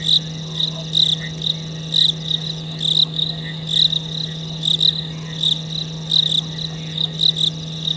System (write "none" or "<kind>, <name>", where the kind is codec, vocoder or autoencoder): none